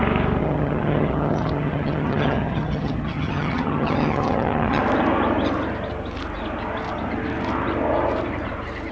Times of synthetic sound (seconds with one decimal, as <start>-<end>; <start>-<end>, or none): 0.4-4.8